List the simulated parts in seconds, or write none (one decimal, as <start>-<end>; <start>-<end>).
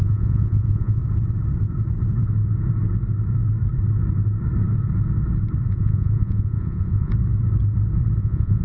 0.0-1.0; 5.7-7.1; 8.2-8.6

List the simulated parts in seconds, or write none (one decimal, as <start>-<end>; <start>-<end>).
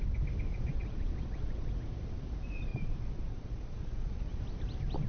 0.5-1.7; 2.7-4.4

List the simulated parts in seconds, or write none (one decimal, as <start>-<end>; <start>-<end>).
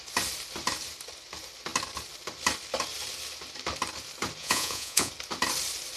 4.4-5.1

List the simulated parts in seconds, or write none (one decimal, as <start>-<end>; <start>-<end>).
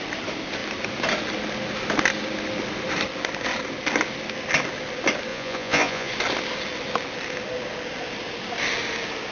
5.3-6.1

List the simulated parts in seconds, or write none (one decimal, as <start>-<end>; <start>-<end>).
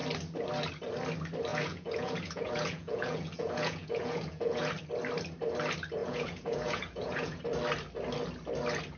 1.5-4.7; 6.0-7.4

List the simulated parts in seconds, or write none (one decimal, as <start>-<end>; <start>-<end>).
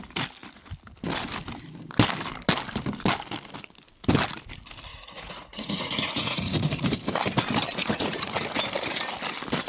4.9-6.7; 7.8-8.4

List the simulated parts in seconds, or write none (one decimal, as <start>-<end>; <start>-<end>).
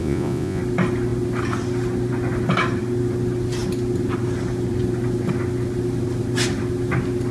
0.0-0.6